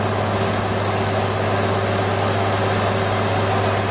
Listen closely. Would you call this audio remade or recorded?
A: recorded